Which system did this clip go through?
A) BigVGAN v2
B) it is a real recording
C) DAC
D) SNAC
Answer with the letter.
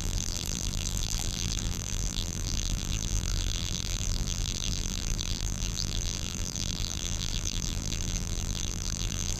A